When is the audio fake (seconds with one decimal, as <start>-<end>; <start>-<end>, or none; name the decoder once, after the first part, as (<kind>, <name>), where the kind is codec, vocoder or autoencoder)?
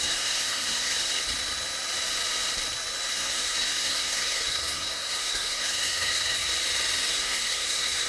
0.0-1.2 (codec, SNAC); 3.1-6.5; 7.1-8.1